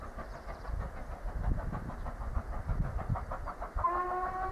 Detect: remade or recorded recorded